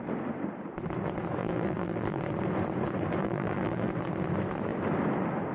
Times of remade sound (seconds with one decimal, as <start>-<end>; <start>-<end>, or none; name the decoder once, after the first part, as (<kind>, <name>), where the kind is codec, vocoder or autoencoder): 1.4-2.2 (vocoder, BigVGAN v2); 3.2-3.9